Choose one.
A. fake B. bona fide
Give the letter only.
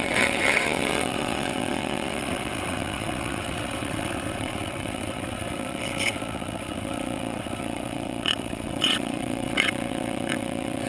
A